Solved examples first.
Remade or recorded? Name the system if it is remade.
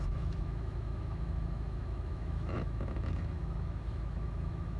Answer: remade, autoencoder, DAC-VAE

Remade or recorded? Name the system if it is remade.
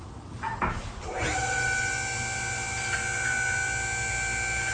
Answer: recorded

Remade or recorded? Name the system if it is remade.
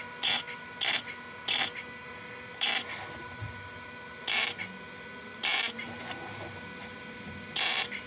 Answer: recorded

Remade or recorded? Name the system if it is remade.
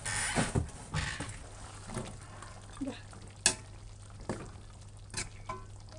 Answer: recorded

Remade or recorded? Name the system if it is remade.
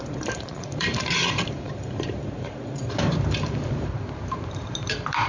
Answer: remade, vocoder, BigVGAN v2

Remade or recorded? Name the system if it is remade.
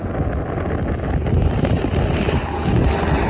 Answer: recorded